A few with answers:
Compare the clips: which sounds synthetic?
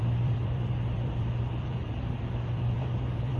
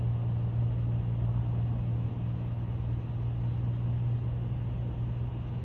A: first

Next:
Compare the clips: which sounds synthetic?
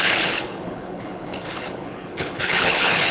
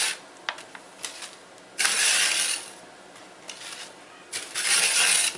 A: first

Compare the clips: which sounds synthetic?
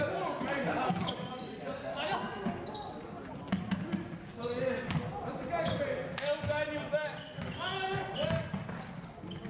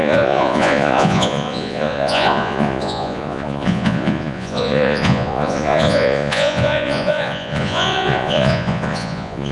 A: second